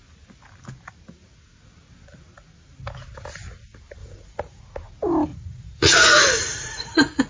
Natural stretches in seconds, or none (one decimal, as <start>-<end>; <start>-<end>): 0.0-4.0; 4.6-5.3